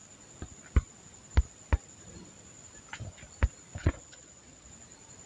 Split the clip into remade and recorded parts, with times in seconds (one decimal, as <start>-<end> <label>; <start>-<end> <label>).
0.0-3.8 recorded; 3.8-4.7 remade; 4.7-5.3 recorded